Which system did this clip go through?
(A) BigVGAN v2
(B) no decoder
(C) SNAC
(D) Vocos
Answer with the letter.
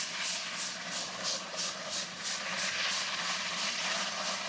B